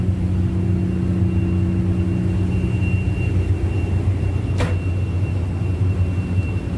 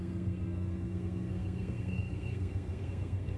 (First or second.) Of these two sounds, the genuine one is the first